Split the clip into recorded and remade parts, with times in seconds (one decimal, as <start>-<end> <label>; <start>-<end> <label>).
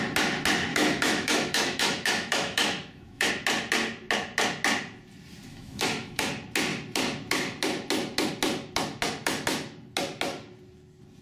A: 0.0-0.7 recorded; 0.7-3.3 remade; 3.3-5.5 recorded; 5.5-6.3 remade; 6.3-11.2 recorded